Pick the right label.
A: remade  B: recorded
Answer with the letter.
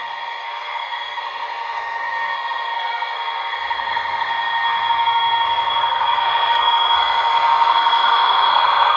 A